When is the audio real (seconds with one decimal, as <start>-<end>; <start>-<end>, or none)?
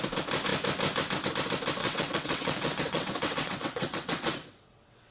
0.0-1.8